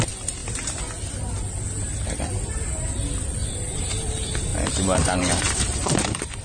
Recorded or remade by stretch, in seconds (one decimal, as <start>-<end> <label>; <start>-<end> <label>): 0.0-3.4 recorded; 3.4-4.1 remade; 4.1-4.5 recorded; 4.5-6.4 remade